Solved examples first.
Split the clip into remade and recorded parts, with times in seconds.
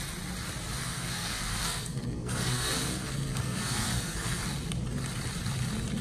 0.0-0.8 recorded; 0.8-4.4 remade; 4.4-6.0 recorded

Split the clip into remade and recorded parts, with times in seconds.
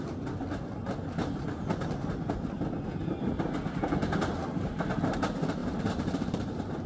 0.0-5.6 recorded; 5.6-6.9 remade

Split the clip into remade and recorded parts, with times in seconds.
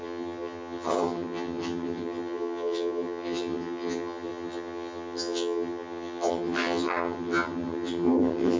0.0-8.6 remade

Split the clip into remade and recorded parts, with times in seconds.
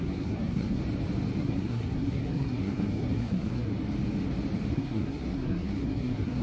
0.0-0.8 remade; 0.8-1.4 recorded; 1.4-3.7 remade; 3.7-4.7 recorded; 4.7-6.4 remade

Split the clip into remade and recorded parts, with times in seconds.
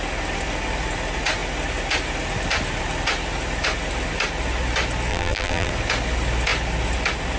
0.0-5.1 recorded; 5.1-5.7 remade; 5.7-7.4 recorded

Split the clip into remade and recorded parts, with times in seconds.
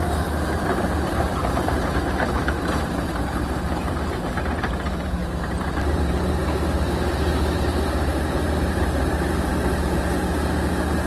0.0-11.1 remade